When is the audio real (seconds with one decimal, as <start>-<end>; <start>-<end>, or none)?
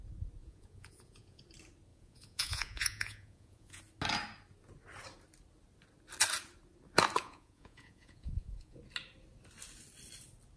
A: 0.0-0.4; 1.4-1.9; 3.8-7.2; 8.8-10.6